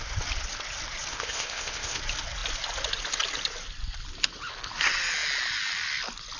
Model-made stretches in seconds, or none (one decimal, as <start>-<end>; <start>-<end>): 1.1-2.0